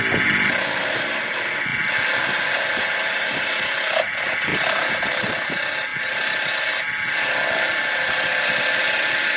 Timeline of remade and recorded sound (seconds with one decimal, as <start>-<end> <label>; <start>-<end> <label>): 0.0-9.4 recorded